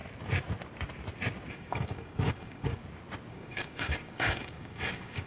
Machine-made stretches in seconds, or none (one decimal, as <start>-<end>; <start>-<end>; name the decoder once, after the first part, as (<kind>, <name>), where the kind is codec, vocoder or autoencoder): 1.5-2.8 (codec, DAC); 3.3-5.3